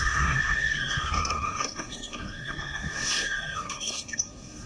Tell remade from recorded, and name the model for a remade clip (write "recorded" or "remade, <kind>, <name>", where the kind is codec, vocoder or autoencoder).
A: remade, codec, SNAC